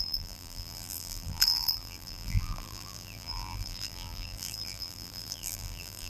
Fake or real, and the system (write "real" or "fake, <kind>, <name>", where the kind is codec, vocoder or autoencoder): fake, vocoder, BigVGAN v2